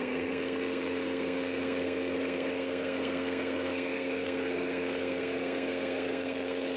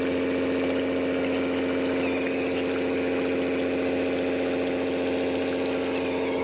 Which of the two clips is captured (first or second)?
second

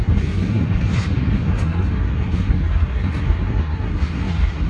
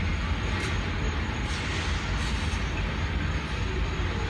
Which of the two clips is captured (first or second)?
second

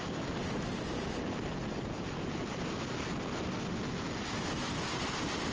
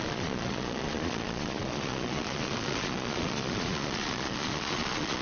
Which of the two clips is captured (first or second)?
first